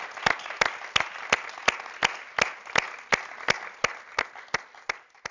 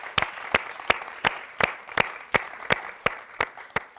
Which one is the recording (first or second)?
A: first